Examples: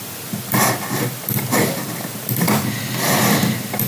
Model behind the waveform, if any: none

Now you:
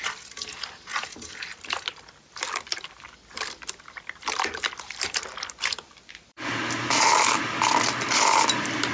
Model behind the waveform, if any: none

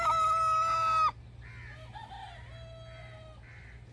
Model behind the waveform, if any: none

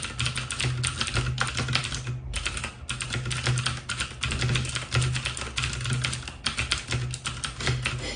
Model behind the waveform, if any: none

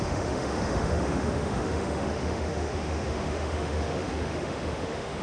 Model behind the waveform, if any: autoencoder, DAC-VAE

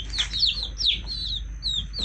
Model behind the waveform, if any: none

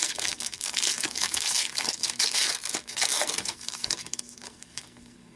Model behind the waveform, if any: codec, SNAC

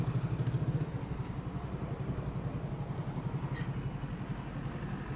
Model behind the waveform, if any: none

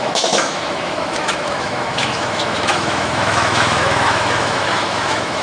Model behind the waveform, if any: autoencoder, DAC-VAE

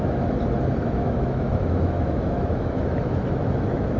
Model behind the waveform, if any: autoencoder, DAC-VAE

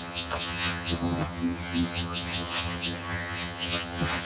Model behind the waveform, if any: vocoder, HiFi-GAN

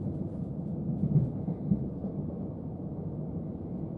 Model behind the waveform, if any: none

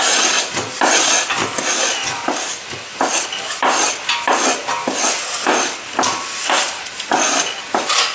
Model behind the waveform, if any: none